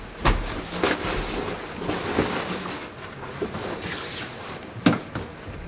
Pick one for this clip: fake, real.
real